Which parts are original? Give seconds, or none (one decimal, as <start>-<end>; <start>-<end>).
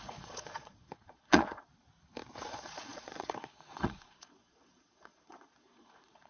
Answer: 1.7-2.5